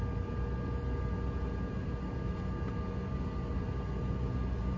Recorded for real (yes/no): yes